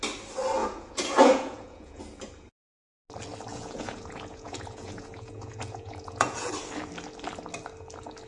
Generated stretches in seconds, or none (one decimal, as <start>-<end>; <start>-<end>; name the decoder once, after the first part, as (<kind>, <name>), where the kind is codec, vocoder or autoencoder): 0.6-2.0 (vocoder, Vocos); 3.5-6.5